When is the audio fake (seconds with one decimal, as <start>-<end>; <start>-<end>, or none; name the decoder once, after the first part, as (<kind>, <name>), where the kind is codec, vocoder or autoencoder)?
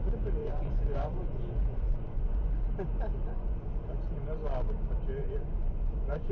0.4-2.5 (vocoder, Vocos); 3.2-3.7; 5.2-6.3